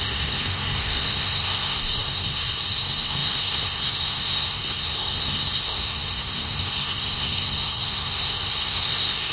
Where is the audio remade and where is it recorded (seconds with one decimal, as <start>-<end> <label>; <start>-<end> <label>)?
0.0-9.3 remade